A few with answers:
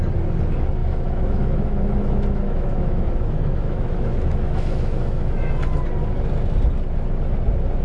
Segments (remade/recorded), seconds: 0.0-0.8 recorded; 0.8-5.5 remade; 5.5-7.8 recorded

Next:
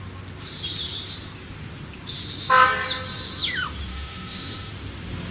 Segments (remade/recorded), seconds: 0.0-3.9 recorded; 3.9-4.7 remade; 4.7-5.3 recorded

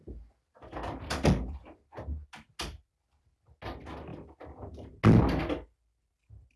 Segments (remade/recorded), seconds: 0.0-6.6 recorded